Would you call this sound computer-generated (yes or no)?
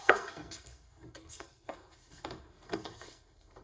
yes